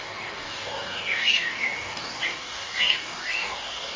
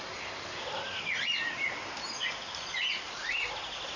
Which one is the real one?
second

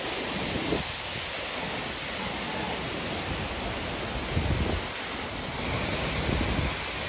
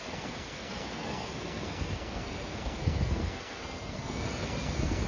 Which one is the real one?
first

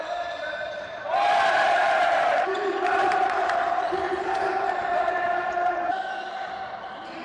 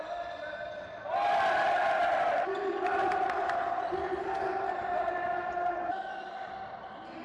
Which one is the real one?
second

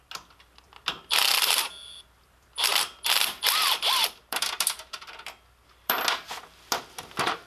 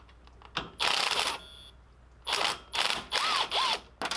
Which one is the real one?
second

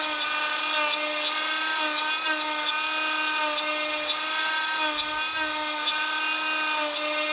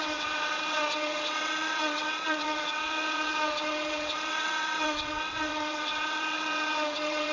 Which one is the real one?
first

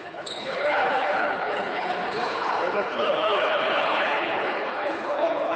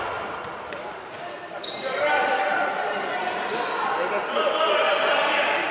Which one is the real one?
second